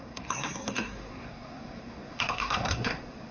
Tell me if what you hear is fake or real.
fake